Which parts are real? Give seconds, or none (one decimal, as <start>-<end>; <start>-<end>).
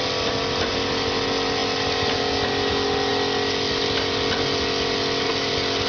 0.0-5.9